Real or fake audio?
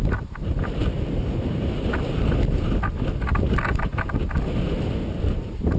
real